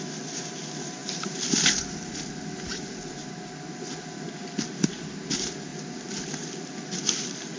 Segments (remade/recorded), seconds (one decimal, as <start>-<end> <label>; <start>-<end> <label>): 0.0-1.0 recorded; 1.0-1.5 remade; 1.5-7.6 recorded